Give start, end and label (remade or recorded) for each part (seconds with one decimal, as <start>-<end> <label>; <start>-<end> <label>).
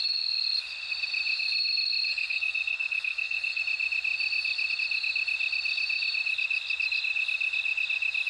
0.0-2.1 recorded; 2.1-3.6 remade; 3.6-8.3 recorded